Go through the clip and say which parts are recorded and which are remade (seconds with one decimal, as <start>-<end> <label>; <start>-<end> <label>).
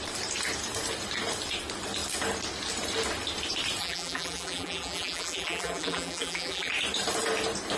0.0-3.8 recorded; 3.8-6.7 remade; 6.7-7.8 recorded